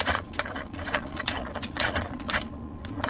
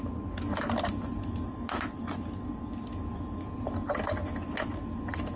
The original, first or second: second